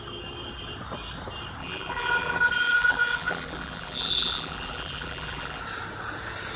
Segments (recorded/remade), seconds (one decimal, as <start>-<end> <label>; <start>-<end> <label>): 0.0-1.6 recorded; 1.6-5.6 remade; 5.6-6.6 recorded